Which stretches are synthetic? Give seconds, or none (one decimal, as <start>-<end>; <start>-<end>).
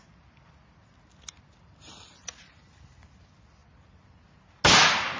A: none